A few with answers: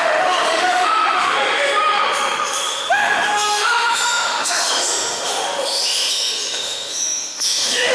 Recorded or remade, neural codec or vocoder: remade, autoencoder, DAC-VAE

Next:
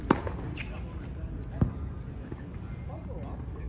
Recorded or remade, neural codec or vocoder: recorded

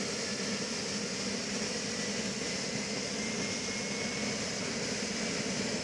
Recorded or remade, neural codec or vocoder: recorded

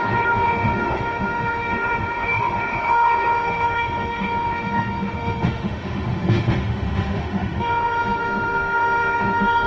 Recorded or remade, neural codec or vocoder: remade, autoencoder, DAC-VAE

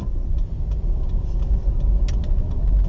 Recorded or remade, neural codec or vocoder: recorded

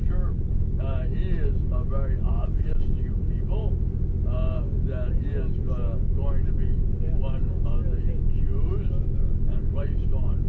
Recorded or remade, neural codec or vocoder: recorded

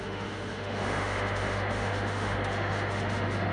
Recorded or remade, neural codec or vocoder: remade, autoencoder, DAC-VAE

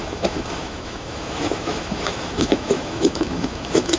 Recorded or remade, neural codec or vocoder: remade, autoencoder, DAC-VAE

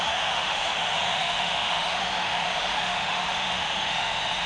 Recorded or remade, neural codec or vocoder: remade, autoencoder, DAC-VAE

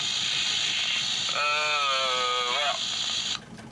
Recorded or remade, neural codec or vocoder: recorded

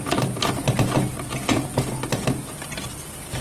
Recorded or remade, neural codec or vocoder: recorded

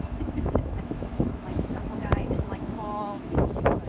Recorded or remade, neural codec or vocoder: remade, autoencoder, DAC-VAE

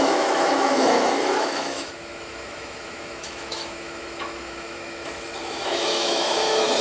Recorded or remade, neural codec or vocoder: remade, autoencoder, DAC-VAE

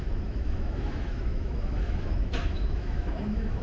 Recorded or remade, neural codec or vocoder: remade, autoencoder, DAC-VAE